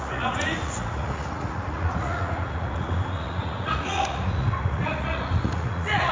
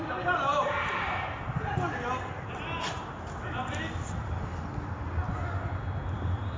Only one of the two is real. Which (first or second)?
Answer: second